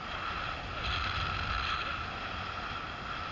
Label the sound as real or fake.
real